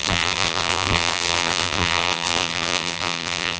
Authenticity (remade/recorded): remade